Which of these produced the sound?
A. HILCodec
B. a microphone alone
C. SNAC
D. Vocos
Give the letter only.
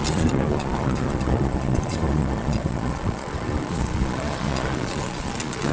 D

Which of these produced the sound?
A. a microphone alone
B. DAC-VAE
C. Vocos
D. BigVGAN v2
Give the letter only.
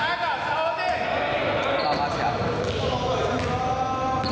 A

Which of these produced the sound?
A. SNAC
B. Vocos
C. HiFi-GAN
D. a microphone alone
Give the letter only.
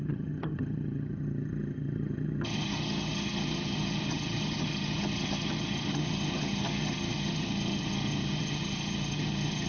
C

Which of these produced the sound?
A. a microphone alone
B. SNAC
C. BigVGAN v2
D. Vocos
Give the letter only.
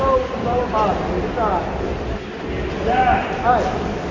A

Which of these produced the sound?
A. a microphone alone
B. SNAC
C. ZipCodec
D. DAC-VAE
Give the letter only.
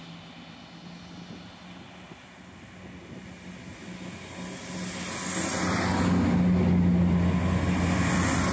A